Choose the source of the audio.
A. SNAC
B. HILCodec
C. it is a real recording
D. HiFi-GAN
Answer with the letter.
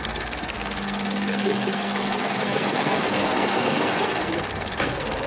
A